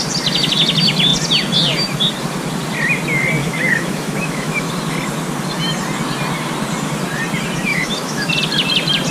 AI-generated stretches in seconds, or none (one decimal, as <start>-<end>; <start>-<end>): 3.4-4.7; 7.7-8.3